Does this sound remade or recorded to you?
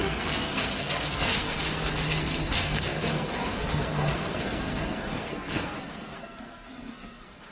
remade